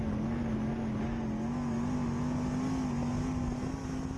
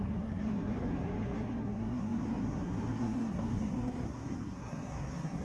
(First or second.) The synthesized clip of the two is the second